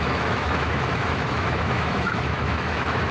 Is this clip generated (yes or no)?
yes